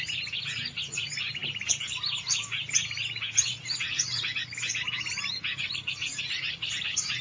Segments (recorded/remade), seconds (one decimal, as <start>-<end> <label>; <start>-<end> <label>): 0.0-7.2 recorded